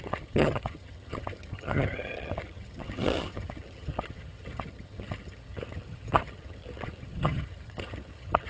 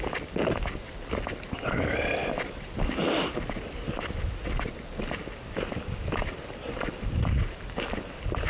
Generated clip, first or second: first